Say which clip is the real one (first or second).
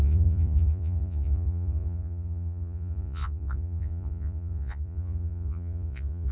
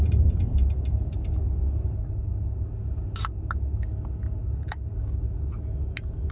second